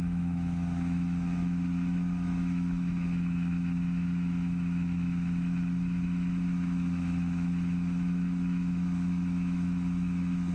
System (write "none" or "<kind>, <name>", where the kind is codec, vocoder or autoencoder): autoencoder, DAC-VAE